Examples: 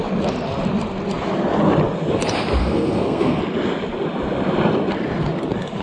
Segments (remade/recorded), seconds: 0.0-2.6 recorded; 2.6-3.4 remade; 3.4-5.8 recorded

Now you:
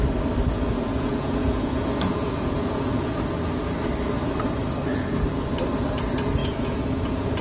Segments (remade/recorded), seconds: 0.0-0.4 recorded; 0.4-3.2 remade; 3.2-4.9 recorded; 4.9-5.5 remade; 5.5-6.4 recorded; 6.4-7.4 remade

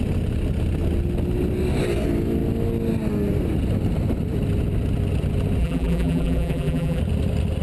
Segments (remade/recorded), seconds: 0.0-5.6 recorded; 5.6-7.0 remade; 7.0-7.6 recorded

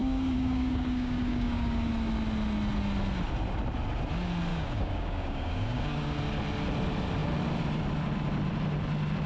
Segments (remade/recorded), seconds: 0.0-1.9 remade; 1.9-4.5 recorded; 4.5-6.2 remade; 6.2-9.3 recorded